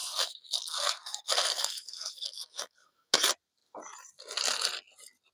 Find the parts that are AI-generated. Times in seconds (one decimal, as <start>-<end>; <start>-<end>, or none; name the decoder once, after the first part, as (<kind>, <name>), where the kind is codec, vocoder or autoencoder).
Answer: 0.0-3.1 (codec, SNAC)